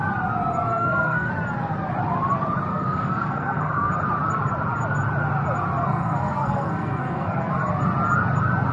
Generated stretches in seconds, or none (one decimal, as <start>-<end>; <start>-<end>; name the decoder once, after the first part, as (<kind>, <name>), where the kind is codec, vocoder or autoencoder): 0.7-1.3 (codec, SNAC); 2.7-3.9; 5.8-7.5